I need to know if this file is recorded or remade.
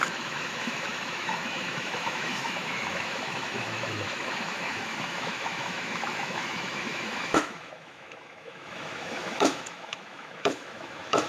remade